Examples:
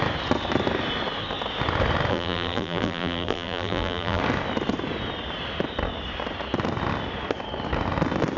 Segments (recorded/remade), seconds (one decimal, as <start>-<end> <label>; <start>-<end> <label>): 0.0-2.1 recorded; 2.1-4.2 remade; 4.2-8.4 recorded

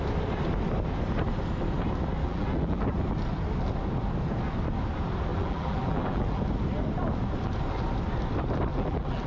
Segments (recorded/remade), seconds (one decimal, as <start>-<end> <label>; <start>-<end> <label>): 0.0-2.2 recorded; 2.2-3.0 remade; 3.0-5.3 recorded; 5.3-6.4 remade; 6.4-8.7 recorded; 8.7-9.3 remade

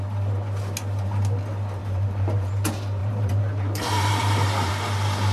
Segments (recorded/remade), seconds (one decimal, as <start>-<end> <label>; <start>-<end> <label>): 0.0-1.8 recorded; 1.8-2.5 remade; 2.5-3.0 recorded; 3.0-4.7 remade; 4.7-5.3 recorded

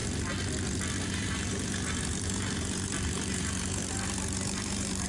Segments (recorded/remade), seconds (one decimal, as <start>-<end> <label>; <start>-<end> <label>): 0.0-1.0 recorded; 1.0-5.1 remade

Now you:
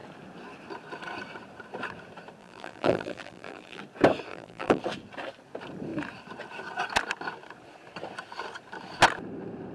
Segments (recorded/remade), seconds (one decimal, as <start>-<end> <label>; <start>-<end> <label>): 0.0-2.4 recorded; 2.4-3.8 remade; 3.8-4.3 recorded; 4.3-4.8 remade; 4.8-9.7 recorded